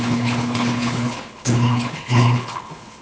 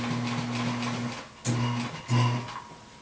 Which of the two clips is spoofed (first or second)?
first